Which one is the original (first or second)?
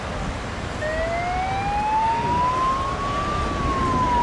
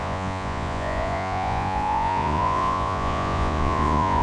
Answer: first